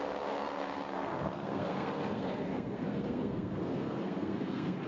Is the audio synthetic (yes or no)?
yes